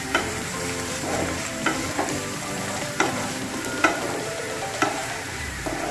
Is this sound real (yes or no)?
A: no